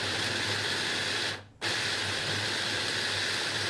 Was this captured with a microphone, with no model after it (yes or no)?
yes